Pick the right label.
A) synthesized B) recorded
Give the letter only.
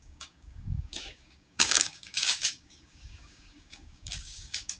A